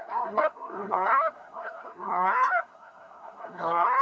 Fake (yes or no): yes